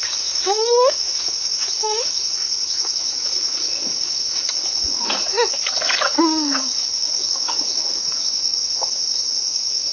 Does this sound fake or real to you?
fake